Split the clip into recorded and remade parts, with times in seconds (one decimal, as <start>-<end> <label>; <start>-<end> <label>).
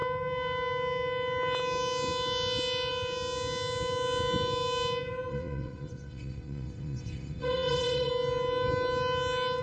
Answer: 0.0-5.3 recorded; 5.3-8.1 remade; 8.1-9.6 recorded